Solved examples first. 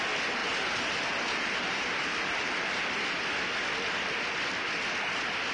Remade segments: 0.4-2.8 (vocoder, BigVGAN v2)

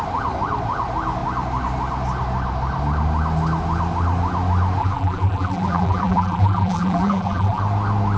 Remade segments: 4.8-7.6 (vocoder, BigVGAN v2)